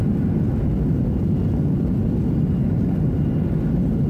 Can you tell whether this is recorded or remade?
recorded